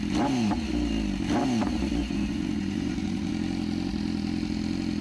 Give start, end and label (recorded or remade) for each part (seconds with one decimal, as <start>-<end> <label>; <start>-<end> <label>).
0.0-2.0 recorded; 2.0-3.3 remade; 3.3-5.0 recorded